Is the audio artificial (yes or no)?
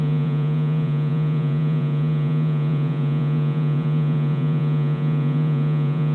yes